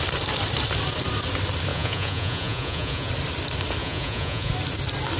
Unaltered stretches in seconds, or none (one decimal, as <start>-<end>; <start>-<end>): 0.0-1.7; 3.1-3.8; 4.5-5.2